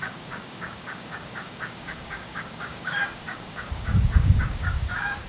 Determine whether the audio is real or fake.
fake